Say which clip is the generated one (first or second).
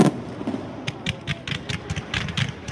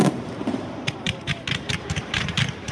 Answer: second